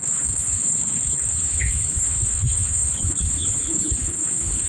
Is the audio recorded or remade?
remade